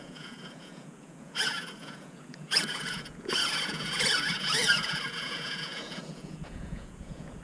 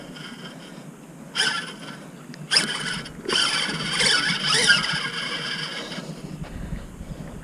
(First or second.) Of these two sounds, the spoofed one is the first